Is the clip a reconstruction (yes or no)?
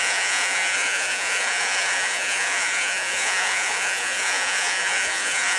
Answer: yes